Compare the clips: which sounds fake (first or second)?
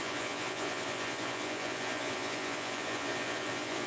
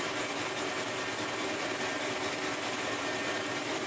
first